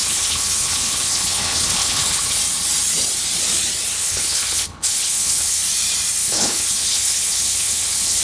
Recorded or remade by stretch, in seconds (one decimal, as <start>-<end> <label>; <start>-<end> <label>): 0.0-2.4 remade; 2.4-4.0 recorded; 4.0-5.6 remade; 5.6-6.2 recorded; 6.2-8.2 remade